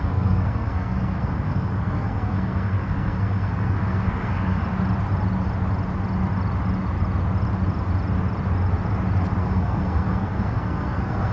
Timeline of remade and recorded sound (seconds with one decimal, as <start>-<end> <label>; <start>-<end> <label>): 0.0-4.6 remade; 4.6-9.4 recorded; 9.4-11.3 remade